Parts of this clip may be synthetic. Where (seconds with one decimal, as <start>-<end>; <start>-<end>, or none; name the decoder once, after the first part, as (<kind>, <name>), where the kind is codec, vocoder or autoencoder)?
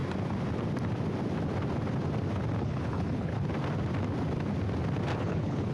2.6-3.3 (codec, HILCodec); 5.2-5.7